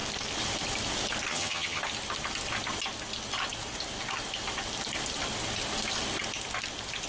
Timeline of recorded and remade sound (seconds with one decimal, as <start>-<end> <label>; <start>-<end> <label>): 0.0-1.3 recorded; 1.3-1.8 remade; 1.8-7.1 recorded